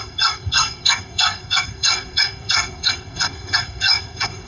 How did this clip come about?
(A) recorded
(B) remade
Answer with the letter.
B